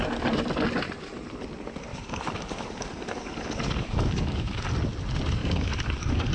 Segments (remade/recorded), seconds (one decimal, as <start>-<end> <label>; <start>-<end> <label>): 0.0-1.9 recorded; 1.9-4.7 remade; 4.7-5.4 recorded; 5.4-6.3 remade